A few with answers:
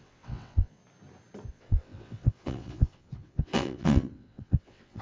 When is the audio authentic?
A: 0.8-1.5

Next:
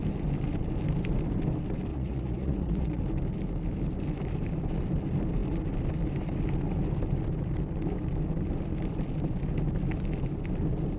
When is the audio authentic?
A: 0.0-1.9; 3.0-11.0

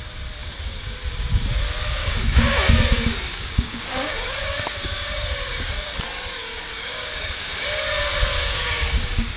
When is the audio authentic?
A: 0.0-0.4; 0.9-2.0; 6.0-6.4; 8.0-8.4

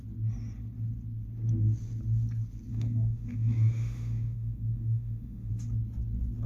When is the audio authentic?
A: 0.0-2.7; 5.5-6.5

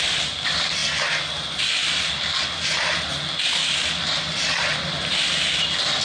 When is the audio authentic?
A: 0.0-6.0

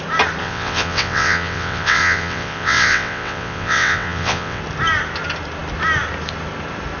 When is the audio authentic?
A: 0.0-0.4; 4.6-7.0

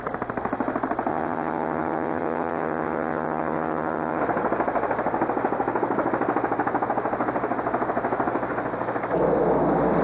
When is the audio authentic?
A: 0.0-1.1; 4.2-10.0